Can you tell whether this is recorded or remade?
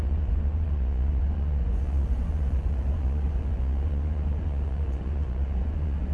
remade